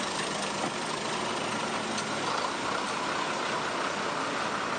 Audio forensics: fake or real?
real